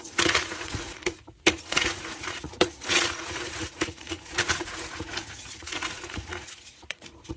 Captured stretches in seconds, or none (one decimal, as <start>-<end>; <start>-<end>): none